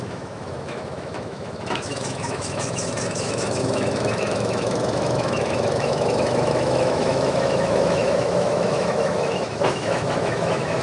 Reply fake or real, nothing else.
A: fake